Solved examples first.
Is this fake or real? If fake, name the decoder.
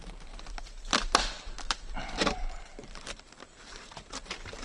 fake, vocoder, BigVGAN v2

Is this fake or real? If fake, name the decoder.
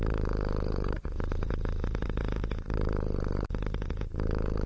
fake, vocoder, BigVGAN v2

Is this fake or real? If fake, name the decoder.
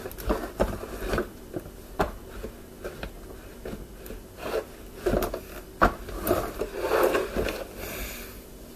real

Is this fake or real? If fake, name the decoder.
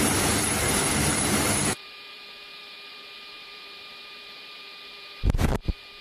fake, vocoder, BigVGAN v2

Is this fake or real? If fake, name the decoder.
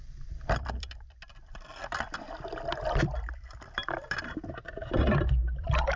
fake, vocoder, BigVGAN v2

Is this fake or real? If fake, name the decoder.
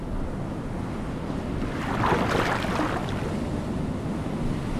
real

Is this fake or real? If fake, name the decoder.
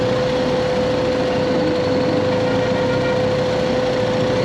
real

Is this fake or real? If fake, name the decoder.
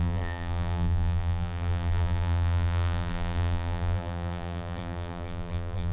fake, vocoder, BigVGAN v2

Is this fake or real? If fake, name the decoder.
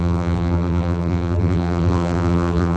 fake, vocoder, BigVGAN v2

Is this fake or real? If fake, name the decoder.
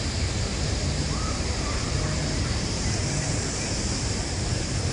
fake, vocoder, BigVGAN v2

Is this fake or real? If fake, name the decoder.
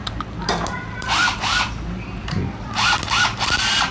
fake, vocoder, BigVGAN v2